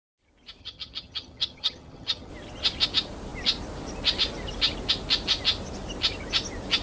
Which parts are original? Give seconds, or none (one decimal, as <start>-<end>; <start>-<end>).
0.0-0.6; 2.3-6.8